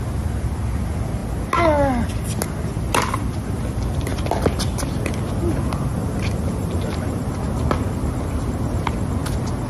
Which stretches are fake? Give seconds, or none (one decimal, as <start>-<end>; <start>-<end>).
6.6-7.2